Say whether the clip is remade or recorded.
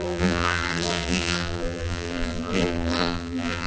remade